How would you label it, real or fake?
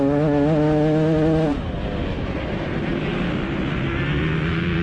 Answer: real